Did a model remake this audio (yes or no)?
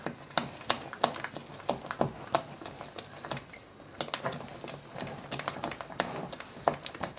no